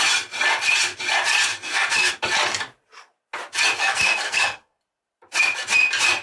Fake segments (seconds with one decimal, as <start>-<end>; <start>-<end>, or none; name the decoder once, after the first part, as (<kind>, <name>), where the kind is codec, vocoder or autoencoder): 1.5-2.1 (codec, SNAC); 3.8-4.8